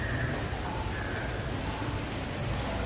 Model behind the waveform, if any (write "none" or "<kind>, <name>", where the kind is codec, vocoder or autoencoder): none